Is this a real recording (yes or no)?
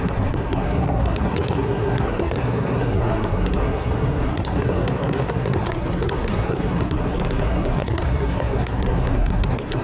no